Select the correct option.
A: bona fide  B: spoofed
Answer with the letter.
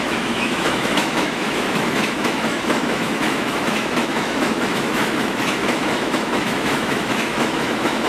B